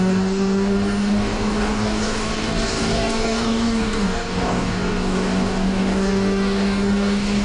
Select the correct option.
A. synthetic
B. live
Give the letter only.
A